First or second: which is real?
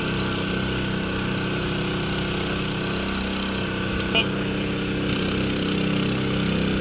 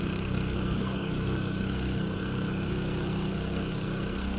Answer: first